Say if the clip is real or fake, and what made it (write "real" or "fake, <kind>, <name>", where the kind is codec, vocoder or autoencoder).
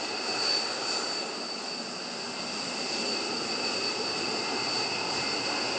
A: real